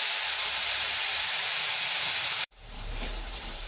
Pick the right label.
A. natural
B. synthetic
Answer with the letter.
B